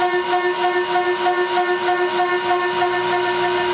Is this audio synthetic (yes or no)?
no